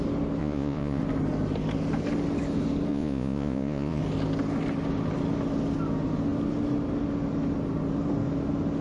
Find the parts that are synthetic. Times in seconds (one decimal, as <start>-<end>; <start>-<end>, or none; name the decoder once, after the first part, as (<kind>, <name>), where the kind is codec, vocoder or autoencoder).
0.4-1.0 (vocoder, Vocos); 2.9-4.0